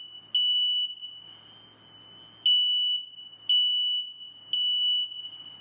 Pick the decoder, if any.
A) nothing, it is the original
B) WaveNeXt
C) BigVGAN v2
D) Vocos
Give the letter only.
A